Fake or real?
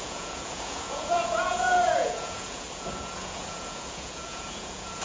fake